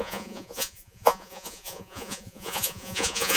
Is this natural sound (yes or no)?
no